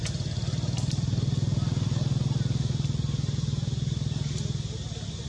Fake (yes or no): no